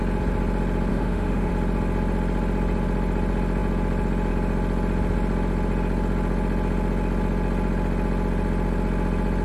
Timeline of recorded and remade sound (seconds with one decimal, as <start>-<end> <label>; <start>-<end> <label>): 0.0-0.9 recorded; 0.9-1.5 remade; 1.5-9.4 recorded

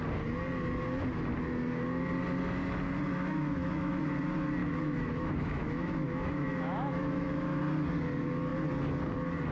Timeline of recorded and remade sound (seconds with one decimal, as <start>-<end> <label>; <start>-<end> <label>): 0.0-3.1 recorded; 3.1-4.0 remade; 4.0-4.6 recorded; 4.6-7.6 remade; 7.6-9.5 recorded